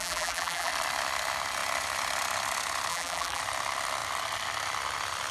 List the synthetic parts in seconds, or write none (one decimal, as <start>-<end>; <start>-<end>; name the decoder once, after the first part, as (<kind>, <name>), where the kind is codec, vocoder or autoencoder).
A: 0.0-0.7 (vocoder, BigVGAN v2); 2.9-3.4